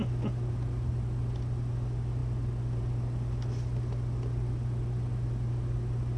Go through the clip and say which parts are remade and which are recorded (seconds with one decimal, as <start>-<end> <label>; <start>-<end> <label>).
0.0-6.2 recorded